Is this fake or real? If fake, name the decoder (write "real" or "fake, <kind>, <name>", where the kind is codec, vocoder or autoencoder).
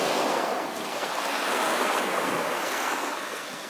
fake, codec, SNAC